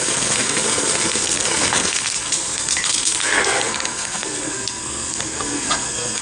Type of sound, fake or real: fake